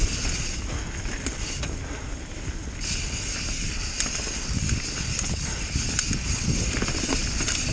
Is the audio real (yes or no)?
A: yes